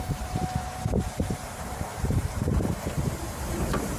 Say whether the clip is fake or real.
fake